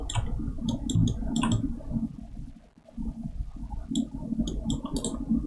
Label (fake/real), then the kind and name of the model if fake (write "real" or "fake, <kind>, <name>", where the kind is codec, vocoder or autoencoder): real